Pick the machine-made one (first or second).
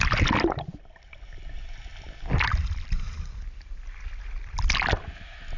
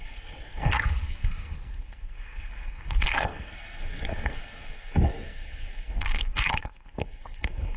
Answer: second